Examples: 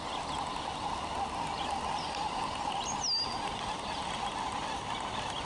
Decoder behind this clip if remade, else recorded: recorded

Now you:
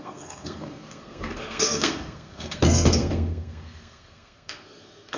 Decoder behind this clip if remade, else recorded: remade, codec, SNAC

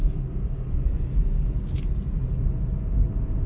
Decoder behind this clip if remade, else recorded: recorded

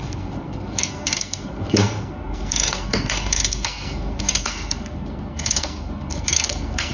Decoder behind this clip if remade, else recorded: remade, codec, SNAC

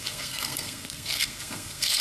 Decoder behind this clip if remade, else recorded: remade, codec, SNAC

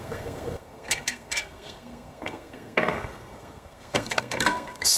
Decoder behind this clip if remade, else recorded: remade, codec, SNAC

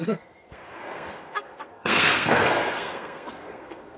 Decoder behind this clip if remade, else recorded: remade, codec, SNAC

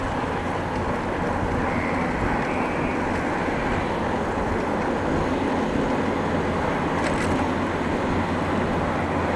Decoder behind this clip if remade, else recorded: recorded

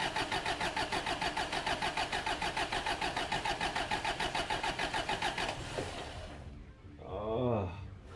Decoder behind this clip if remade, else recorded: recorded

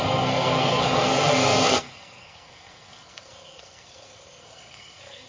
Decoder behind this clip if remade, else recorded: remade, codec, SNAC